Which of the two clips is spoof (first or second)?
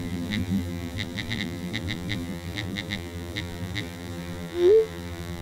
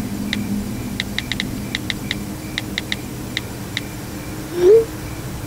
first